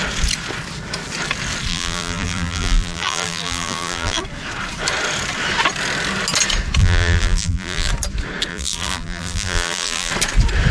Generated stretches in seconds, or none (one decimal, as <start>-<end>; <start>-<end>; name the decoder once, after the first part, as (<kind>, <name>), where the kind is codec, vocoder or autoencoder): 1.7-4.2 (vocoder, BigVGAN v2); 6.8-7.9; 8.5-10.1

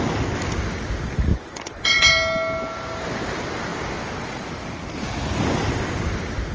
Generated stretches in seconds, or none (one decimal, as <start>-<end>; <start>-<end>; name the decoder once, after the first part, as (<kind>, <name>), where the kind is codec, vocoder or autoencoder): 1.3-2.1 (vocoder, Vocos)

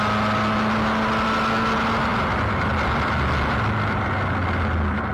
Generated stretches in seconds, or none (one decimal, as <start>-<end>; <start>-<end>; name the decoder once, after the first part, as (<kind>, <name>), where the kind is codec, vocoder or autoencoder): none

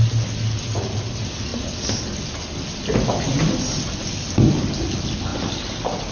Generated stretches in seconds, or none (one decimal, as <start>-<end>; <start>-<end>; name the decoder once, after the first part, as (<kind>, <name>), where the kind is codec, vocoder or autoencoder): 5.3-6.1 (vocoder, BigVGAN v2)

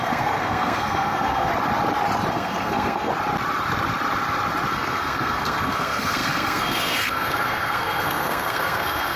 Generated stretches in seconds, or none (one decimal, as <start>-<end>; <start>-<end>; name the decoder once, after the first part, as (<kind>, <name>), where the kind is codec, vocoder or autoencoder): 0.0-1.5 (codec, SNAC); 2.3-3.1; 4.7-9.2

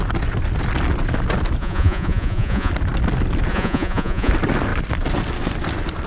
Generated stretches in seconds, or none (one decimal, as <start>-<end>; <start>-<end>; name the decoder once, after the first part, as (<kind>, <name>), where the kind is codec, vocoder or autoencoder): 1.6-2.7 (vocoder, Vocos); 3.5-4.3

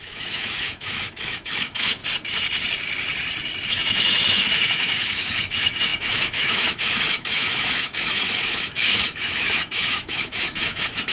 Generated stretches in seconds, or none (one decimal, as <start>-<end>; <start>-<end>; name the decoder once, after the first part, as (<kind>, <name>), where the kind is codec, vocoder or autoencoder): 0.0-2.0 (autoencoder, DAC-VAE); 3.7-11.1

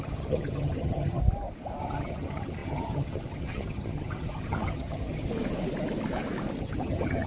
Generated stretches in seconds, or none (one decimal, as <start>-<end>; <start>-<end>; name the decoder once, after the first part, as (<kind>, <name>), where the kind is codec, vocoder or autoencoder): 0.0-1.2 (vocoder, HiFi-GAN); 1.8-5.3; 6.6-7.3